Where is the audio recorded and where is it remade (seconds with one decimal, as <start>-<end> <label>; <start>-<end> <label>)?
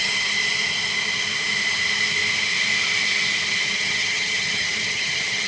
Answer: 0.0-0.4 remade; 0.4-3.7 recorded; 3.7-5.5 remade